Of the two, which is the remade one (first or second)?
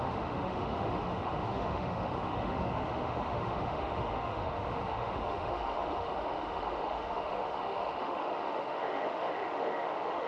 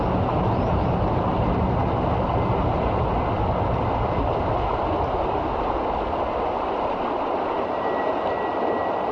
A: first